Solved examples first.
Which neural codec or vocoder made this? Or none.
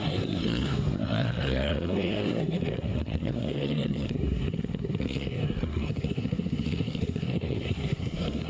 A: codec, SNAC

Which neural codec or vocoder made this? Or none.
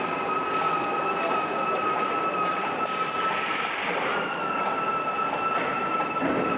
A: none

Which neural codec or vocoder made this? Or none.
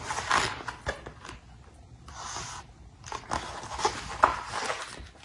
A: none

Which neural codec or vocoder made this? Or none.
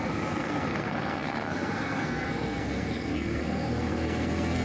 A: codec, SNAC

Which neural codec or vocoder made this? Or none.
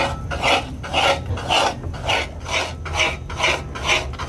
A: none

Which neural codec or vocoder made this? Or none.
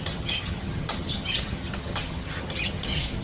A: vocoder, HiFi-GAN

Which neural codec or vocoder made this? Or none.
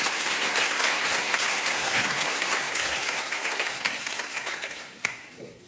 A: codec, SNAC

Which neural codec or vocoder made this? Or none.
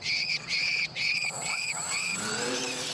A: vocoder, WaveNeXt